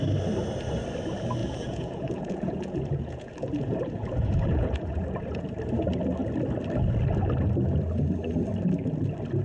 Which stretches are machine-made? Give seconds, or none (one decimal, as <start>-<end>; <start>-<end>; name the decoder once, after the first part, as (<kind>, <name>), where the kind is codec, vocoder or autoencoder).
1.4-5.4 (vocoder, Vocos)